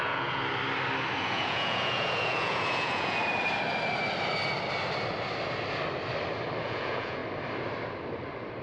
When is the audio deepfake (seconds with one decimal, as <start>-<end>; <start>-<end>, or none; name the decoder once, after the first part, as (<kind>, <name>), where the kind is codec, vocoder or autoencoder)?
0.0-0.4 (vocoder, Vocos); 1.2-3.2; 6.6-7.2